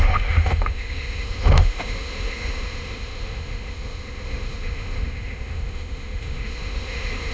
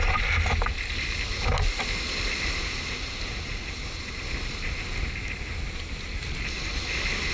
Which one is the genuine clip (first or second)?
second